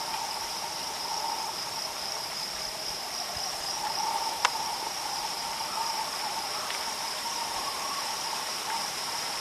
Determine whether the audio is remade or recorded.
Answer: remade